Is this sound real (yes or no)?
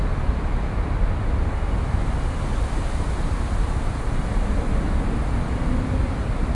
yes